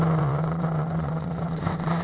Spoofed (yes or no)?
yes